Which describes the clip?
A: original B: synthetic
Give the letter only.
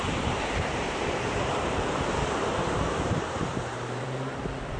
B